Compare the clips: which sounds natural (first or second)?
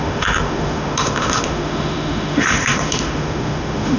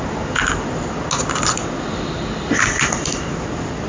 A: second